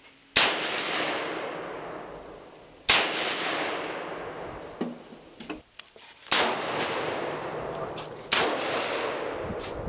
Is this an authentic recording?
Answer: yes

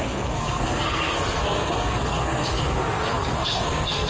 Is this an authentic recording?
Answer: no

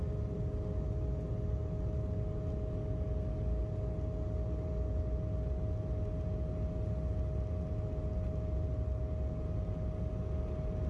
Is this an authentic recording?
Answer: yes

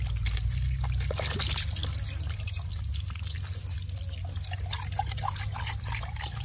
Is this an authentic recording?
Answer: yes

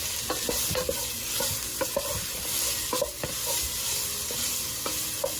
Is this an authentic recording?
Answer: yes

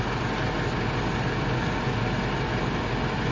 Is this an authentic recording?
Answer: yes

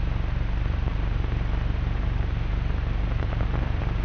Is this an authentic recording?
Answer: no